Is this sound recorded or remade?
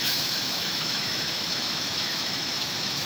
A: remade